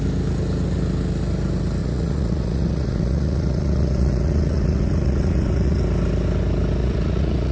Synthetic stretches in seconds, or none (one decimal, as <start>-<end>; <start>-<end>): 1.8-5.8; 6.8-7.5